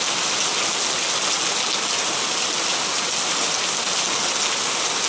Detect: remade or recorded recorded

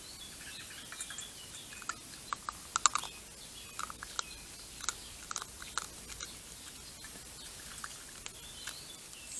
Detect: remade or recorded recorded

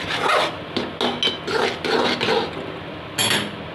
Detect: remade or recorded recorded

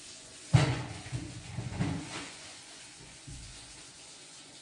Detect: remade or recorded remade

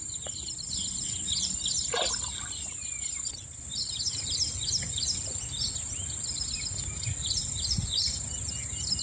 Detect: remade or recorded recorded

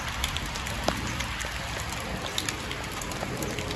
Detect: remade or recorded recorded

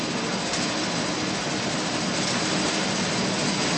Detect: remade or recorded recorded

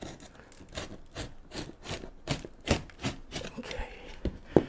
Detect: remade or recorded recorded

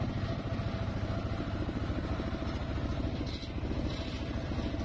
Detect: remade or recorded recorded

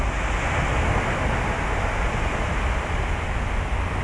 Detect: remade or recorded recorded